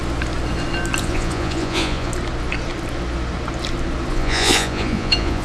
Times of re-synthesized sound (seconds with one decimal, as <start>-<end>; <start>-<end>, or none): 1.0-2.1; 4.1-5.4